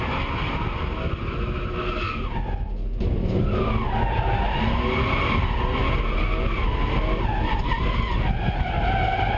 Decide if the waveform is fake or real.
real